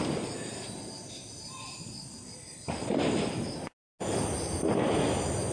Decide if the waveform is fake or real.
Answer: real